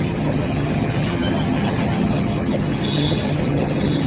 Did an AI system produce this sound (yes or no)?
yes